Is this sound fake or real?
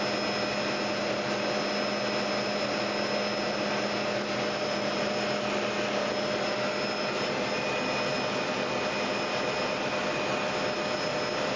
real